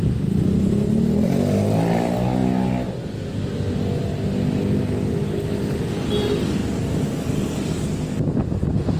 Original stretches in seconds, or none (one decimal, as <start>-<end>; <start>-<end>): 0.0-6.6; 7.3-9.0